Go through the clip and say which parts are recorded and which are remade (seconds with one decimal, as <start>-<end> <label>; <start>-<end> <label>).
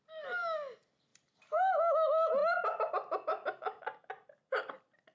0.0-1.1 recorded; 1.1-1.7 remade; 1.7-5.1 recorded